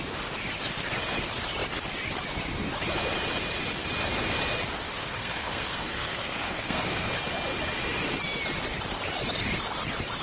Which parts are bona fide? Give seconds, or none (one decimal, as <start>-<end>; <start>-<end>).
0.0-5.0; 7.1-10.2

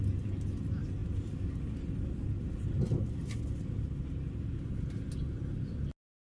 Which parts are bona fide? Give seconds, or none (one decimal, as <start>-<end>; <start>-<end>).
0.0-6.2

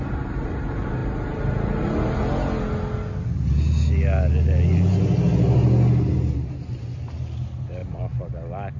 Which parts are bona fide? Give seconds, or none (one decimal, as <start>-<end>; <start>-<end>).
0.0-8.8

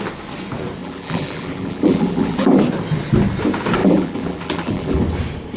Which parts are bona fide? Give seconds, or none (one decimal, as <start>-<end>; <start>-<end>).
0.0-0.8; 2.6-3.8; 5.0-5.6